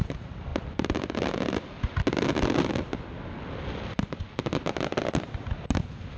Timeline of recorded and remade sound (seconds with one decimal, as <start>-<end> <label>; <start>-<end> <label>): 0.0-6.2 recorded